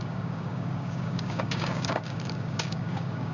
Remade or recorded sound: remade